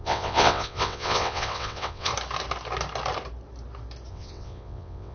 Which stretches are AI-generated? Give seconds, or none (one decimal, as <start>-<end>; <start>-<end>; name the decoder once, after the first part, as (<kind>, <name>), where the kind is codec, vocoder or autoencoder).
0.0-2.1 (vocoder, WaveNeXt); 4.1-5.1